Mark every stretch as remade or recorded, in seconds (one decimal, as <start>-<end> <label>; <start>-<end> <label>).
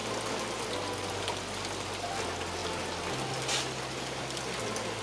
0.0-5.0 recorded